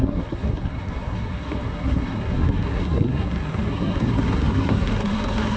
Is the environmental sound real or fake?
fake